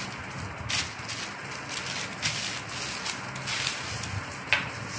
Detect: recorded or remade recorded